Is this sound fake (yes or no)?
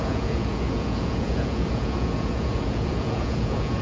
yes